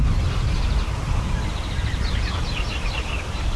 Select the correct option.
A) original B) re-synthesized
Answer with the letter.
A